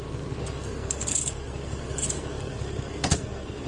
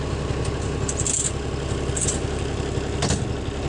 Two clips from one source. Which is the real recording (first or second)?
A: second